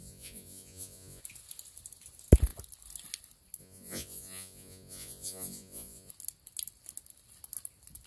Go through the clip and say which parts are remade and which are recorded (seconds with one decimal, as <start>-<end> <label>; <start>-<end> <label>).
0.0-1.2 remade; 1.2-3.6 recorded; 3.6-6.1 remade; 6.1-8.1 recorded